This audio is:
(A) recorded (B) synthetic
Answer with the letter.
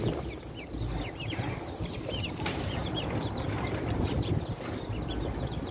B